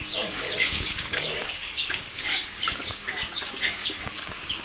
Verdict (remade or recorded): remade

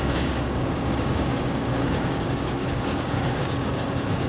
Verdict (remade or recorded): remade